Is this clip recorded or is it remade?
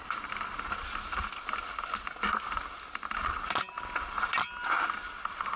recorded